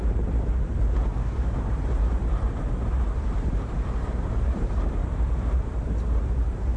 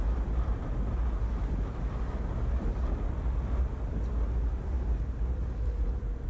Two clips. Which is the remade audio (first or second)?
first